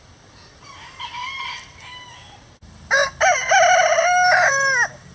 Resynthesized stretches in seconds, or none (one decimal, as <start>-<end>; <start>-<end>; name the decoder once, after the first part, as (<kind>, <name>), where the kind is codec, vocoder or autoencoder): none